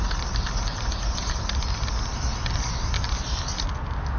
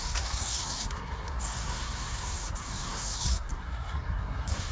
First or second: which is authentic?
first